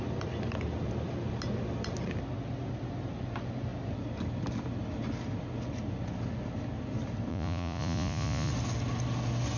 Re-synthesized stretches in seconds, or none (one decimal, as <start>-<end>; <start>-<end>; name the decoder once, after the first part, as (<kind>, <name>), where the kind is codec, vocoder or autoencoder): 7.3-8.5 (vocoder, Vocos)